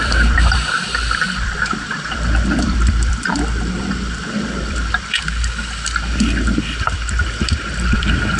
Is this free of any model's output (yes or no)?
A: no